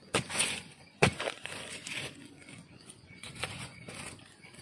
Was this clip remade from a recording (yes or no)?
yes